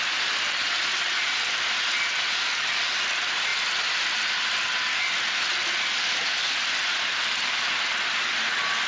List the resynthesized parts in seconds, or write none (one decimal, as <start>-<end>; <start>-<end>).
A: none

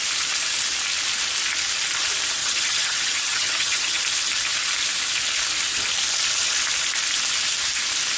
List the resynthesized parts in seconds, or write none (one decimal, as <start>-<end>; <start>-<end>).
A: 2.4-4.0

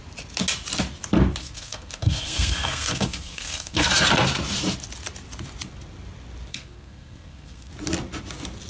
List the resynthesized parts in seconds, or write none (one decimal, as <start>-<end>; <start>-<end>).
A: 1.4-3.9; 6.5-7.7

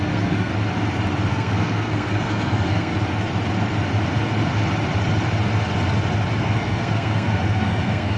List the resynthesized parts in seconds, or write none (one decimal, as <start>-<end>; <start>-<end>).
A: 0.0-0.5; 1.3-2.9; 6.4-8.2

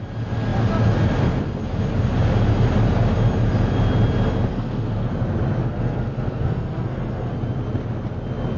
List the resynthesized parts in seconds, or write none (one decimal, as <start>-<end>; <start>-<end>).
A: 4.5-5.1; 5.6-7.3